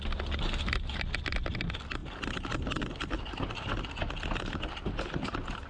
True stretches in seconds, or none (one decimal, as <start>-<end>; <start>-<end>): 0.0-5.7